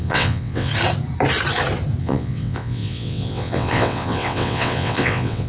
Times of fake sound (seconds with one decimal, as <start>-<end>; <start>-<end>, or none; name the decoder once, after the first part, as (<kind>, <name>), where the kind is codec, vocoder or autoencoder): 0.0-0.7 (vocoder, WaveNeXt); 2.0-5.5